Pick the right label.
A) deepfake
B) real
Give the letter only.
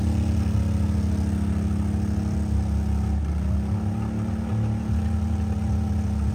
B